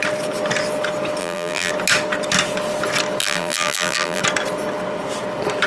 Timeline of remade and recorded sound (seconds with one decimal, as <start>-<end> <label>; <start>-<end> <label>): 0.0-1.2 recorded; 1.2-1.7 remade; 1.7-3.2 recorded; 3.2-4.2 remade; 4.2-5.7 recorded